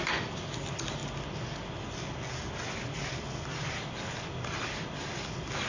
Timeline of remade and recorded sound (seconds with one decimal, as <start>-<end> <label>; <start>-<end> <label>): 0.0-5.7 recorded